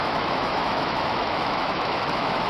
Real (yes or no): no